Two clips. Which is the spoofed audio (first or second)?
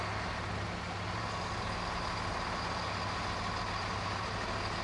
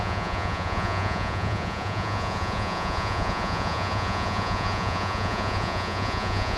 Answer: second